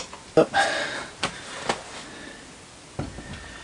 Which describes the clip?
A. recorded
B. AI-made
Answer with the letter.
A